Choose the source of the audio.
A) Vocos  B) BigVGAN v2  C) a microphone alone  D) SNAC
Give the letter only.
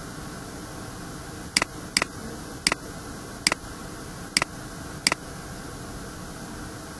C